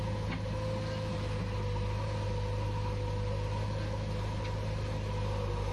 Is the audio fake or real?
real